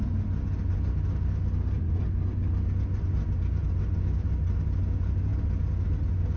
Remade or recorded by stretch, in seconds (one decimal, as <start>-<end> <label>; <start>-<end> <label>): 0.0-6.4 recorded